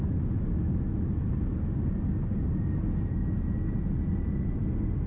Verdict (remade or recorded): recorded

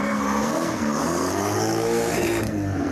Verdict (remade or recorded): remade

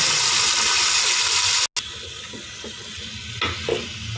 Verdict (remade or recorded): recorded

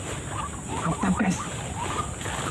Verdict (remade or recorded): recorded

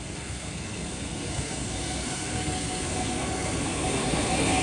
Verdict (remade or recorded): remade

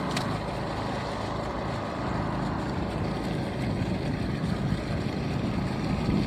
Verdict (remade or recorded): recorded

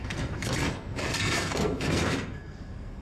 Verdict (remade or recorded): remade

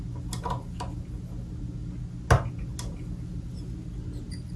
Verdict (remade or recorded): recorded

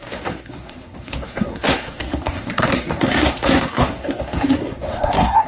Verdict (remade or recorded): remade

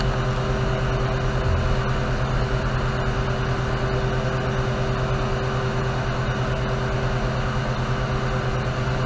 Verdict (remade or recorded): recorded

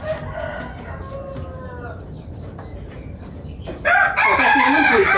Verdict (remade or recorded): recorded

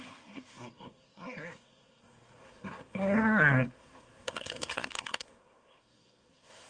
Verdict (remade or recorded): remade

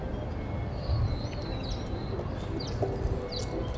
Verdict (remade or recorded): recorded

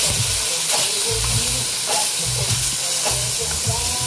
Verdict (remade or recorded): recorded